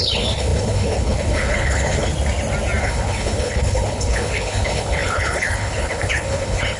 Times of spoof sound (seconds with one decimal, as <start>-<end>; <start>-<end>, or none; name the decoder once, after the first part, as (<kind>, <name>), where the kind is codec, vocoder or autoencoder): 0.0-2.1 (codec, HILCodec); 2.8-6.8